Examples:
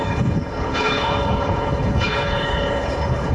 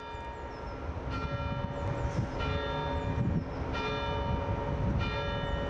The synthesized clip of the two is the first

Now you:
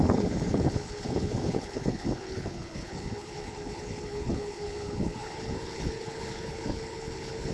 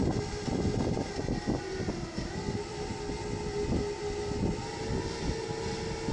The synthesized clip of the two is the first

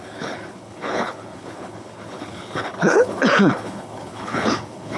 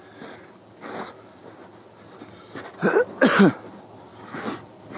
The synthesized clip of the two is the first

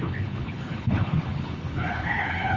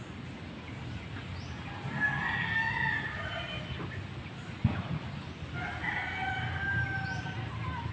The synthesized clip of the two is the first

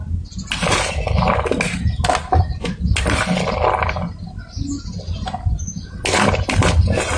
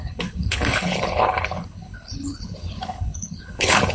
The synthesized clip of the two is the second